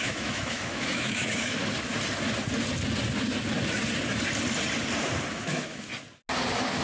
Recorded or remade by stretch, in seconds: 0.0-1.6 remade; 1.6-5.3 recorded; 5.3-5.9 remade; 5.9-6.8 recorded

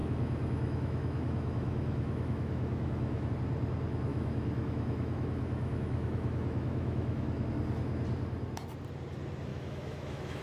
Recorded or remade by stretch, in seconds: 0.0-3.3 remade; 3.3-4.1 recorded; 4.1-7.5 remade; 7.5-9.5 recorded; 9.5-10.4 remade

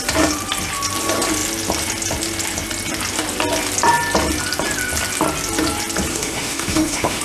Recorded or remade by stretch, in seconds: 0.0-6.1 recorded; 6.1-7.2 remade

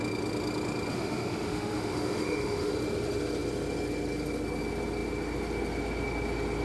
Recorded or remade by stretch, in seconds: 0.0-0.9 recorded; 0.9-2.7 remade; 2.7-6.6 recorded